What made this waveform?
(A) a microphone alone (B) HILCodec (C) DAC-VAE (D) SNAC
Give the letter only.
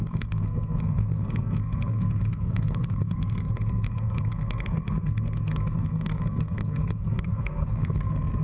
D